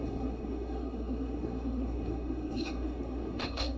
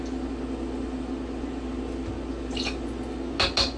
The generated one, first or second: first